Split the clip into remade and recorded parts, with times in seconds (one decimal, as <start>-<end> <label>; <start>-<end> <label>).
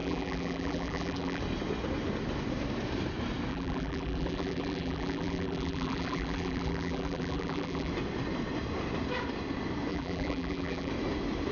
0.0-1.4 remade; 1.4-3.5 recorded; 3.5-7.9 remade; 7.9-9.9 recorded; 9.9-10.9 remade; 10.9-11.5 recorded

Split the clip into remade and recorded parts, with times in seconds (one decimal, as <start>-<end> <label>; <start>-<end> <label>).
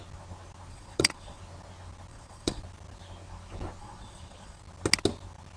0.0-0.7 recorded; 0.7-1.4 remade; 1.4-2.1 recorded; 2.1-2.6 remade; 2.6-3.8 recorded; 3.8-4.6 remade; 4.6-5.6 recorded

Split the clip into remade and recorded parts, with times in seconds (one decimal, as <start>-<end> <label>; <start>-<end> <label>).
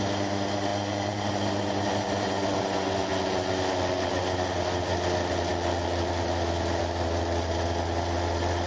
0.0-8.7 recorded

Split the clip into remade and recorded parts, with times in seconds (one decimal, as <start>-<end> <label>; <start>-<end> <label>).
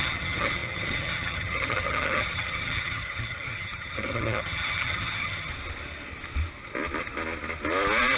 0.0-5.5 remade; 5.5-8.2 recorded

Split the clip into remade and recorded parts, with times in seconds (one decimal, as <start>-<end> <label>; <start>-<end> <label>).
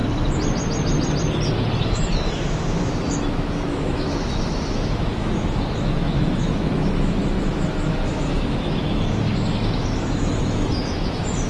0.0-1.8 recorded; 1.8-11.5 remade